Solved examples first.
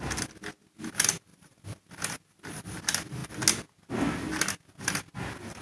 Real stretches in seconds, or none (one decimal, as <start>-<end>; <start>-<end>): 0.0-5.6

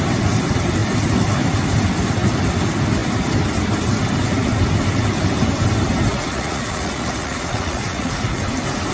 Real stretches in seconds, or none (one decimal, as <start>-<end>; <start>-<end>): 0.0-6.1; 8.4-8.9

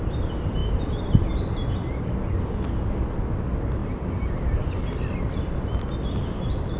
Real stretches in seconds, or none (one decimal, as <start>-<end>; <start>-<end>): 0.0-6.8

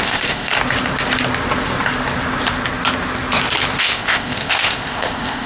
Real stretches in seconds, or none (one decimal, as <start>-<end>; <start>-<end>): 0.5-3.8